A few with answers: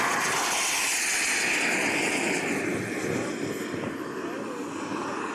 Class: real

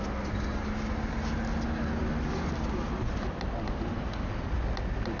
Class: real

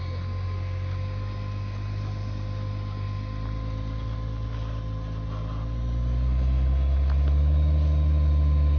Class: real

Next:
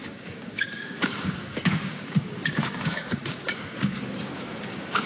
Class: fake